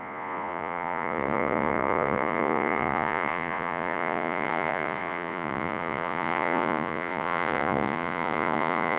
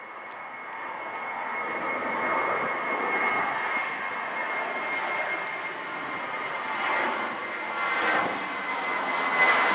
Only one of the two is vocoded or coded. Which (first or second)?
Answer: first